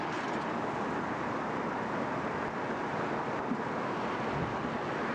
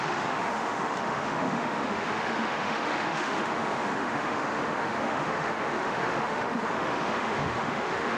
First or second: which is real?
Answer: first